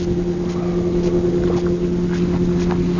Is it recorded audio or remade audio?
recorded